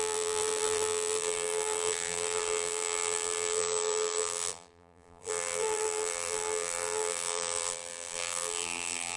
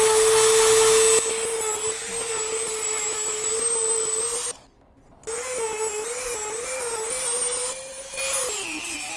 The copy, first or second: first